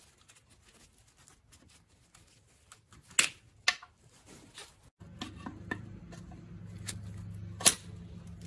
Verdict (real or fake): real